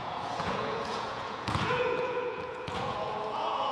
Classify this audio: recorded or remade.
remade